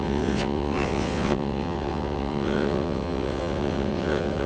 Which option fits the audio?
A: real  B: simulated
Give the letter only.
B